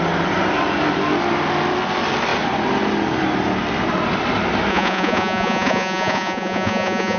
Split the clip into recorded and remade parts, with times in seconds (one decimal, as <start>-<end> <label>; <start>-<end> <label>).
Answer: 0.0-4.7 recorded; 4.7-7.2 remade